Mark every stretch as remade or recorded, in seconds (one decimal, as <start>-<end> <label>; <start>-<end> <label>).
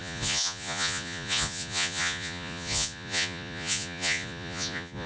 0.0-5.1 remade